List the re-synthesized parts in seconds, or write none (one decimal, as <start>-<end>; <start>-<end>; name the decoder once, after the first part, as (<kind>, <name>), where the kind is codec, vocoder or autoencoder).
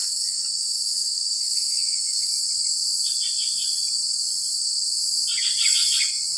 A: 0.0-2.3 (autoencoder, DAC-VAE)